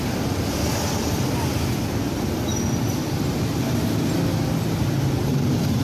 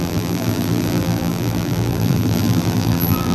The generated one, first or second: second